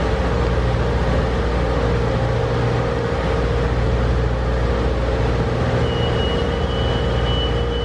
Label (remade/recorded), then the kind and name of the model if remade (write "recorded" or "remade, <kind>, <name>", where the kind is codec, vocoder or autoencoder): recorded